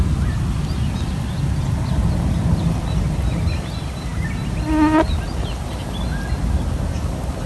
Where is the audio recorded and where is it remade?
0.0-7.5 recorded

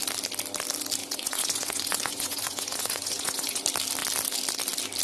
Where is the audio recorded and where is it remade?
0.0-1.0 recorded; 1.0-3.6 remade; 3.6-5.0 recorded

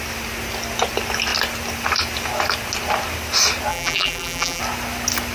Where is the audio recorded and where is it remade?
0.0-3.7 recorded; 3.7-4.6 remade; 4.6-5.3 recorded

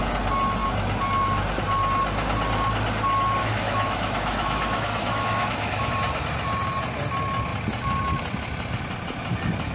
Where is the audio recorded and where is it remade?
0.0-3.4 recorded; 3.4-5.9 remade; 5.9-9.7 recorded

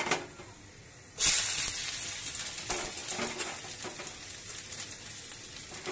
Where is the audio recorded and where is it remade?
0.0-5.9 recorded

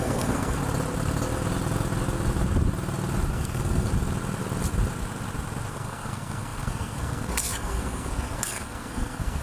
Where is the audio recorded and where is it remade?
0.0-0.6 remade; 0.6-3.3 recorded; 3.3-3.9 remade; 3.9-5.7 recorded; 5.7-9.4 remade